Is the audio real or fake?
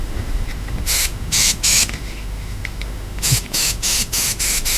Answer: fake